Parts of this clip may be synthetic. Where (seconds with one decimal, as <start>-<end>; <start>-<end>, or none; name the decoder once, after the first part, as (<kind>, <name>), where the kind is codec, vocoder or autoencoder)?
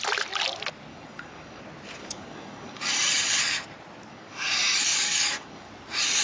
0.9-1.6 (codec, DAC); 2.0-2.9; 4.1-5.7